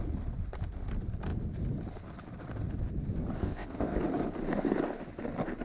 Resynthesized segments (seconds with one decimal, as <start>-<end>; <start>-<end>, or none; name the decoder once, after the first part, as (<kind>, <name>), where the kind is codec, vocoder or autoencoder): 3.4-4.0 (codec, ZipCodec)